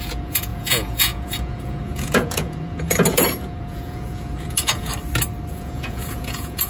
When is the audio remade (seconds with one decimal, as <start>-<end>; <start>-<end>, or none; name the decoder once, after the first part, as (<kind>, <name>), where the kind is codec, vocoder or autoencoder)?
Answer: 0.0-4.9 (vocoder, Vocos); 5.5-6.7